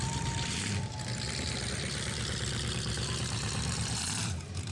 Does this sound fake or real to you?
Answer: fake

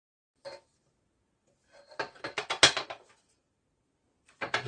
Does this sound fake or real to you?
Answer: real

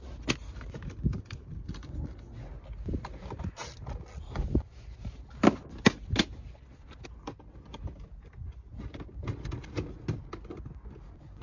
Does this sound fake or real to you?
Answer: real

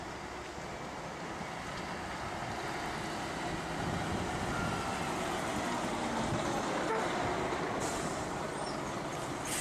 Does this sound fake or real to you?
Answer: real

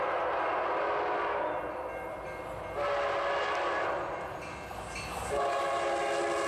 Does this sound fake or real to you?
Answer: real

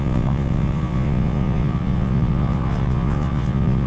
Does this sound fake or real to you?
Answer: fake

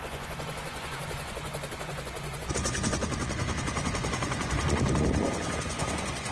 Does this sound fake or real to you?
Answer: fake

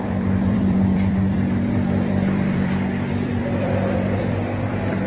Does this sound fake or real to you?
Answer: fake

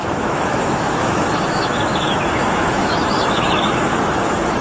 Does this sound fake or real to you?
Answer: fake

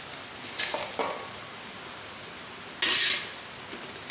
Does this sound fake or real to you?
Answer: real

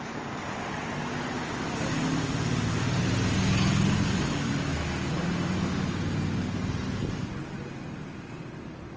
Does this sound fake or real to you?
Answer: real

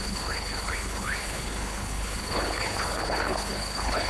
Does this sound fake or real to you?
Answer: fake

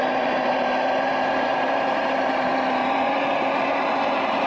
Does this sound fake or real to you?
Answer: fake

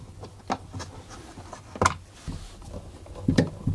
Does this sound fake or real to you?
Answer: real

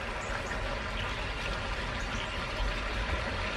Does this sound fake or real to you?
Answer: real